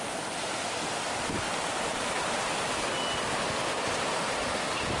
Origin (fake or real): real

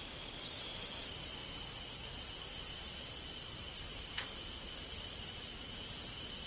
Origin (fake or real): real